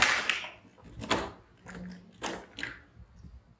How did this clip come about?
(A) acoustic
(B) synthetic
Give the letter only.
A